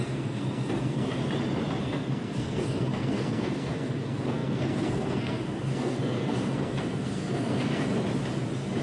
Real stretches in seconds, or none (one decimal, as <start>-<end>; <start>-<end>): 1.2-1.8; 7.9-8.8